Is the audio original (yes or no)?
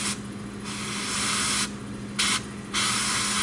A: yes